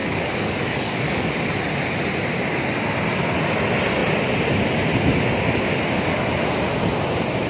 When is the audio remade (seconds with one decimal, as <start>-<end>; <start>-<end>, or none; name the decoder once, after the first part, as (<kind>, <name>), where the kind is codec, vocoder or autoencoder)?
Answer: 0.0-1.3 (codec, DAC)